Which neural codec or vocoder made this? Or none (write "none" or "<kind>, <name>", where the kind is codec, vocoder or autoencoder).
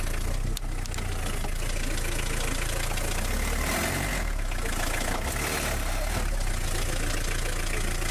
none